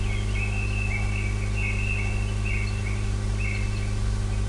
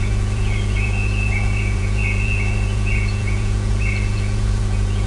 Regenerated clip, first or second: second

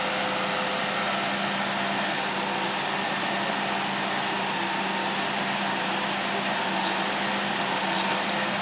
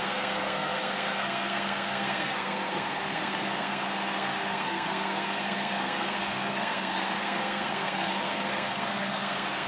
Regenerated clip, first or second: second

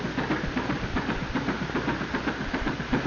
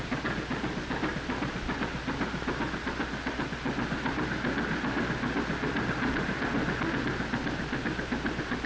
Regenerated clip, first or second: first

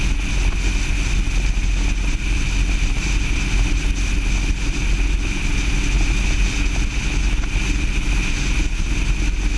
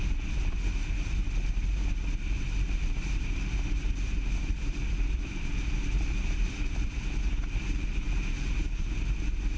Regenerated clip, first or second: second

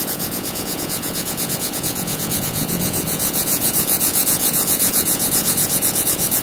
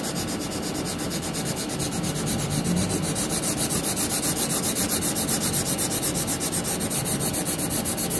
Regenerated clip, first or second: first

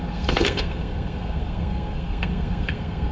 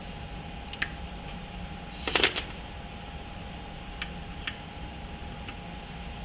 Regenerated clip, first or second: first